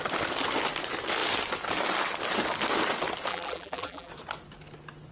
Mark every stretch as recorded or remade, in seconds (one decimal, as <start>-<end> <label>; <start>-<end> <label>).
0.0-3.3 recorded; 3.3-4.1 remade; 4.1-5.1 recorded